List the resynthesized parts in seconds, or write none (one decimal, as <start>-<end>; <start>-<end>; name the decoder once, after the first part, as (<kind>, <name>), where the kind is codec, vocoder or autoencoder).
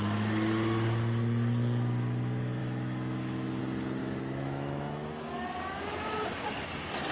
2.6-3.6 (autoencoder, DAC-VAE); 4.0-5.1